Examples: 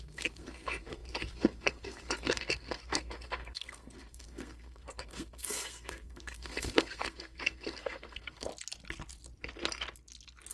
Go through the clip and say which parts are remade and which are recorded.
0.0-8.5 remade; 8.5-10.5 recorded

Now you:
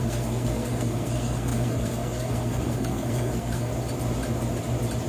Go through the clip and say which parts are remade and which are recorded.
0.0-3.7 remade; 3.7-5.1 recorded